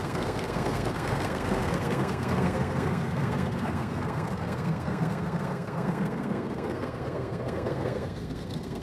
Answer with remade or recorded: remade